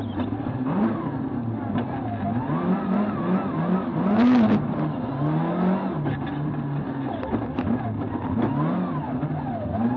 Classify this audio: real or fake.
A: real